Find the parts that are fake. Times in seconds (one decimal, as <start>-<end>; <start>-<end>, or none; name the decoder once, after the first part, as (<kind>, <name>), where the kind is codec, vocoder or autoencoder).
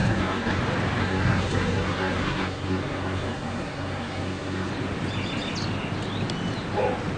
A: 0.0-0.6 (codec, SNAC); 1.0-4.7